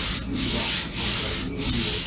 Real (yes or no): yes